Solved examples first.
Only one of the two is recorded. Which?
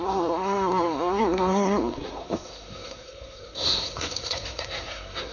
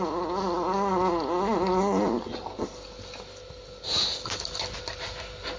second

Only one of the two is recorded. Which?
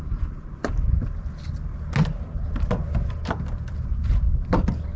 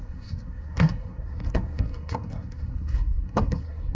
first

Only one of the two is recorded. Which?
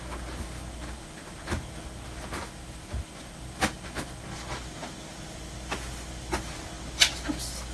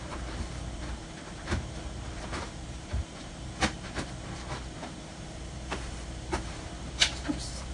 first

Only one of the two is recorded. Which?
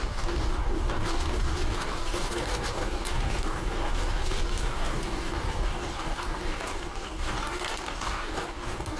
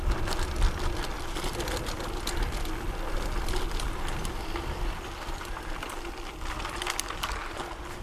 second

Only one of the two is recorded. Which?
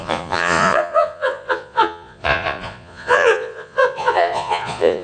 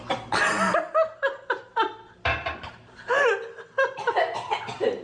second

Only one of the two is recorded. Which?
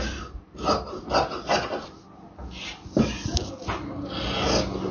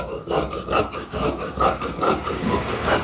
first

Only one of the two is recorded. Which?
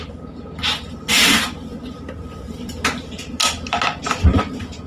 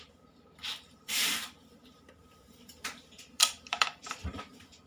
first